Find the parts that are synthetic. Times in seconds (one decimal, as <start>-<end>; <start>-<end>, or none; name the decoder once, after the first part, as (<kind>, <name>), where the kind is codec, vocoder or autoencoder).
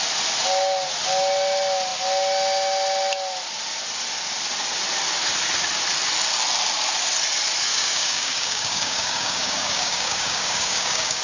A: 7.7-11.2 (codec, DAC)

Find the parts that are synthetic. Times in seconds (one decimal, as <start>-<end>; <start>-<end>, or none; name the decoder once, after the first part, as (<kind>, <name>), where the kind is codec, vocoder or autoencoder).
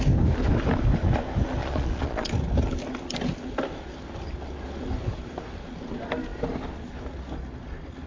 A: 1.6-2.3 (vocoder, Vocos)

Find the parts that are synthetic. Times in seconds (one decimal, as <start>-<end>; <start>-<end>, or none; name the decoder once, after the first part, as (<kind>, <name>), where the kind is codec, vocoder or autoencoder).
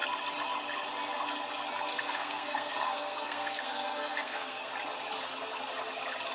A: 1.9-4.7 (codec, SNAC)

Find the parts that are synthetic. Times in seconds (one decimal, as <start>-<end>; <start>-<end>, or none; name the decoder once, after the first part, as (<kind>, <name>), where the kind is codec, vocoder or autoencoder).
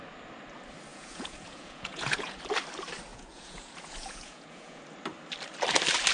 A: 0.9-2.4 (vocoder, Vocos); 3.1-4.8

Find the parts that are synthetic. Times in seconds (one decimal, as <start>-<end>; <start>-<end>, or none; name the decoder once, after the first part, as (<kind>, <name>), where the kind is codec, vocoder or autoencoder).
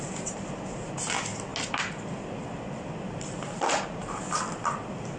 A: none